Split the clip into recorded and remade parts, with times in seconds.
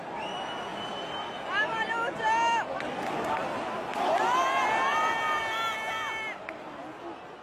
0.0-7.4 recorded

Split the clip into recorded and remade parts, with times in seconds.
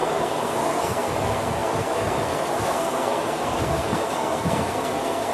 0.0-5.3 remade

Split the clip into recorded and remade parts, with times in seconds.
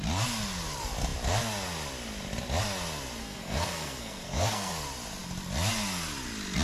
0.0-3.2 recorded; 3.2-4.7 remade; 4.7-6.6 recorded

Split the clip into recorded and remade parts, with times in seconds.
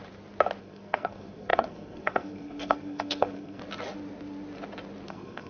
0.0-0.6 recorded; 0.6-3.6 remade; 3.6-5.1 recorded; 5.1-5.5 remade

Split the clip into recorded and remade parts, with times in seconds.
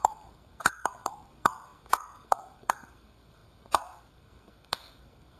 0.0-5.4 remade